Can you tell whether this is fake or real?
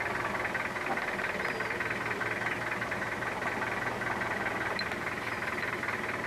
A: real